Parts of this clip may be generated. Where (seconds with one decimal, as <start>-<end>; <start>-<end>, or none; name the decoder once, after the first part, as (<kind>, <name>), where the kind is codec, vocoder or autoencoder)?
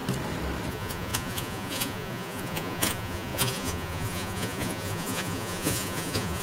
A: 0.7-6.4 (vocoder, Vocos)